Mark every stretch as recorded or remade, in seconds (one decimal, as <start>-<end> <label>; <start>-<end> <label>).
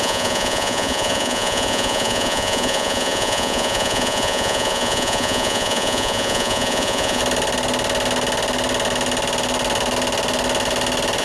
0.0-7.2 remade; 7.2-11.2 recorded